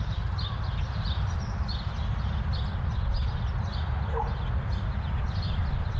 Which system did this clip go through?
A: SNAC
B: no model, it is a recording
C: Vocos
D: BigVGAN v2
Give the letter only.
B